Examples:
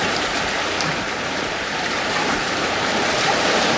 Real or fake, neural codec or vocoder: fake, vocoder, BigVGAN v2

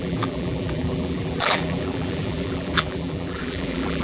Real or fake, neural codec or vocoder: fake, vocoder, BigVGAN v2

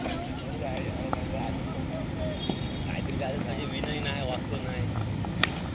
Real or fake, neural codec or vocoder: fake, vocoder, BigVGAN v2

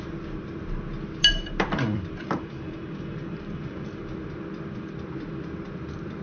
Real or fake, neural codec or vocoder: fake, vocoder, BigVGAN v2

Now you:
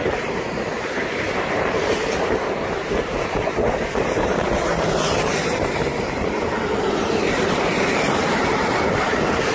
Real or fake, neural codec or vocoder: fake, vocoder, BigVGAN v2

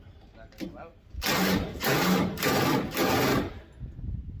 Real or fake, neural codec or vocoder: real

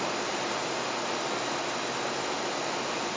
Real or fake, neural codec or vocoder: real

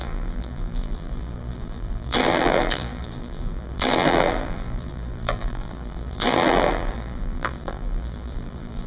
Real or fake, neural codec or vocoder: fake, vocoder, BigVGAN v2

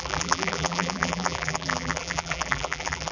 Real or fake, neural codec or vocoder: fake, vocoder, BigVGAN v2